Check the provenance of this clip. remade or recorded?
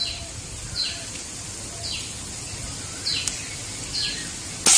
recorded